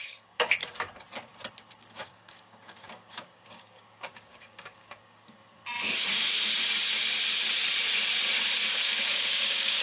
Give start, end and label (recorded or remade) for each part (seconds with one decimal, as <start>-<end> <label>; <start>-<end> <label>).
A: 0.0-0.6 remade; 0.6-1.7 recorded; 1.7-5.6 remade; 5.6-8.7 recorded; 8.7-9.8 remade